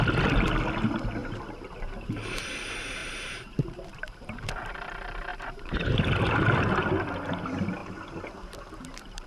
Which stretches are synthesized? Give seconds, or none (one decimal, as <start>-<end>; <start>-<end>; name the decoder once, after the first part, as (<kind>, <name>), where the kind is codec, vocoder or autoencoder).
1.2-2.5 (vocoder, BigVGAN v2); 3.0-4.5; 5.3-6.0; 7.8-9.3